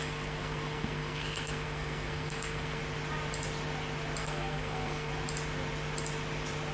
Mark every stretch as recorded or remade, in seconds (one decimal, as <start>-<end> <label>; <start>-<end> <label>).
0.0-2.8 remade; 2.8-4.2 recorded; 4.2-5.1 remade; 5.1-6.7 recorded